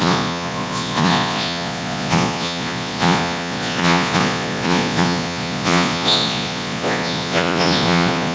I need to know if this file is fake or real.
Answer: fake